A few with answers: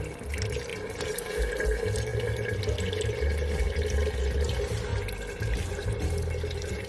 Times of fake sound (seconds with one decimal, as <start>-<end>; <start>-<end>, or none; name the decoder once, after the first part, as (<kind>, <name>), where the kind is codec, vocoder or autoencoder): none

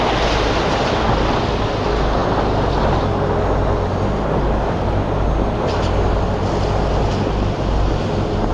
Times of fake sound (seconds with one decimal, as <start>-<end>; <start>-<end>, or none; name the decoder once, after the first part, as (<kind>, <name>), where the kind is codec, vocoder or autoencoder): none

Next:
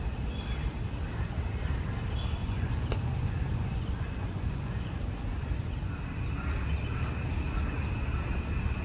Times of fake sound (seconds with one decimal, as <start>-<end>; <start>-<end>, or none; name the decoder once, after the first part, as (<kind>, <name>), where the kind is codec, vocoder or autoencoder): 2.4-5.9 (vocoder, Vocos)

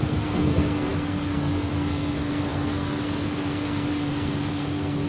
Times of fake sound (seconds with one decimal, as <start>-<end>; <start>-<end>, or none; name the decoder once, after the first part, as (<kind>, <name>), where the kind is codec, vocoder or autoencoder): 0.0-5.1 (codec, SNAC)

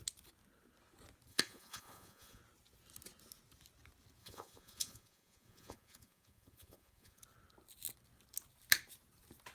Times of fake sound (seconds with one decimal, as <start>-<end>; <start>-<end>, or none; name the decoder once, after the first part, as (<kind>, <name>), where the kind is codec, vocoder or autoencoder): 1.3-2.4 (vocoder, Vocos); 4.2-7.2

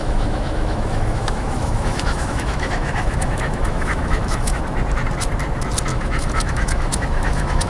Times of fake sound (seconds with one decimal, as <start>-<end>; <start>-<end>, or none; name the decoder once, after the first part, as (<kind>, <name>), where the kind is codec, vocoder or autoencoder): 0.0-4.6 (autoencoder, DAC-VAE); 5.9-7.7

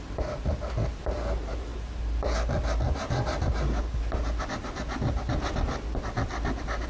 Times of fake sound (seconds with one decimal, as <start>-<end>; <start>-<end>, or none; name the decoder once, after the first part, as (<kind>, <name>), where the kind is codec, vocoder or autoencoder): none

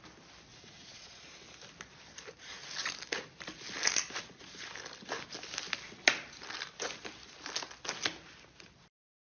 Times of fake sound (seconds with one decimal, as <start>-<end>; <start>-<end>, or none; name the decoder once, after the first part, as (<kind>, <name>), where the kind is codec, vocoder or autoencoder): 0.5-1.3 (vocoder, Vocos)